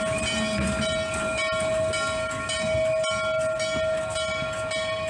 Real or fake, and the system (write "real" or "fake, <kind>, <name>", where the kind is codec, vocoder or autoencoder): real